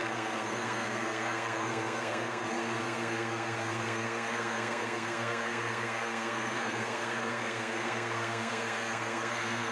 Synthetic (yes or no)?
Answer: yes